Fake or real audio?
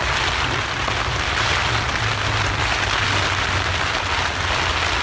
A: real